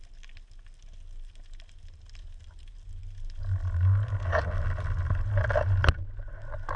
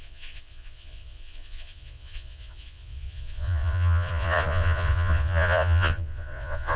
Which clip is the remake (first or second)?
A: second